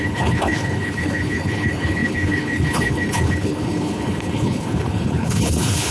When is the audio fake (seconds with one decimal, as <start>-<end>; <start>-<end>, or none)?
0.0-5.9